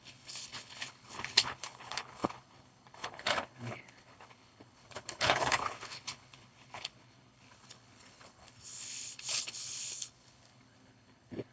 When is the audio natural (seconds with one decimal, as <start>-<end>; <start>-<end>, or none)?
none